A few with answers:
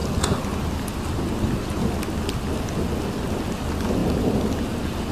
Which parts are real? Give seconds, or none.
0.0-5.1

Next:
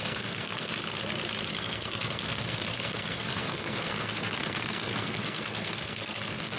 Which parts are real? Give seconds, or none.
0.7-1.5